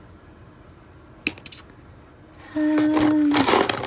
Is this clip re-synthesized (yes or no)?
no